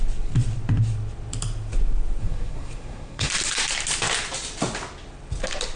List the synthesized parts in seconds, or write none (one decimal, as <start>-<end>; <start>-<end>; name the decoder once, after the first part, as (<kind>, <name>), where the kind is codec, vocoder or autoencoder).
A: 2.2-3.3 (codec, SNAC)